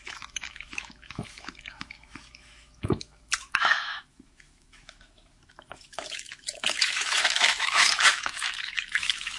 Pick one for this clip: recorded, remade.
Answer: remade